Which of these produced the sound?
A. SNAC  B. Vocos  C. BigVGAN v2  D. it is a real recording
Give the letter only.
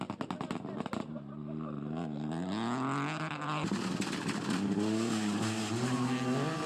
D